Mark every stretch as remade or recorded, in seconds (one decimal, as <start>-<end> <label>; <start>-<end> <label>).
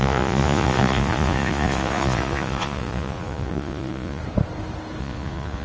0.0-4.2 remade; 4.2-5.0 recorded; 5.0-5.6 remade